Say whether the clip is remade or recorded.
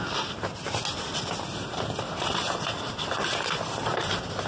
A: recorded